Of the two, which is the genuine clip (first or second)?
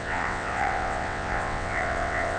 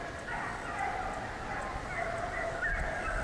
second